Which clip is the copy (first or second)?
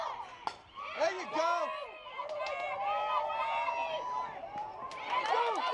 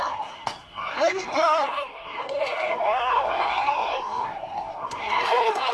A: second